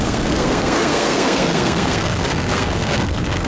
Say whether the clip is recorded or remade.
remade